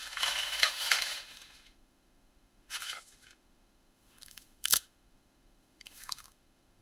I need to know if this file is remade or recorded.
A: remade